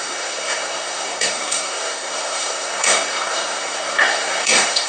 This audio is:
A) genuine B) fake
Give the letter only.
B